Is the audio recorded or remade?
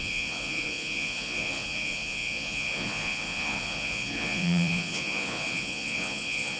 remade